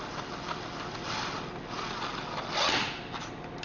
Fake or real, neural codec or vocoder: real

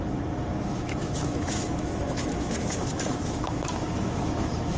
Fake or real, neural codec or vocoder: fake, autoencoder, DAC-VAE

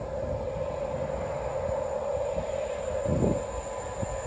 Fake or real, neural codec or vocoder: real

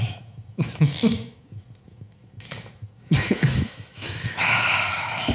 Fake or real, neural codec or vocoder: fake, autoencoder, DAC-VAE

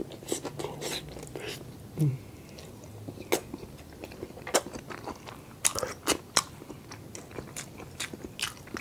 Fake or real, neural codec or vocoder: real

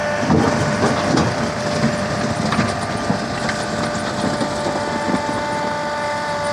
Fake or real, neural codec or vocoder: real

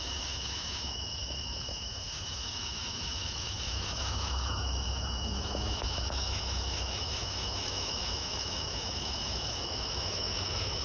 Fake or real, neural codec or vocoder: fake, autoencoder, DAC-VAE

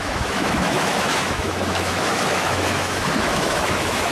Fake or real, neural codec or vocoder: fake, autoencoder, DAC-VAE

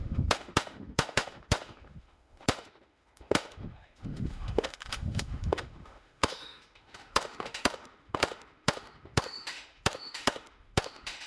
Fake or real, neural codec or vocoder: fake, autoencoder, DAC-VAE